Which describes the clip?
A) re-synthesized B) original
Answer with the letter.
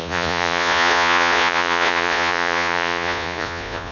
A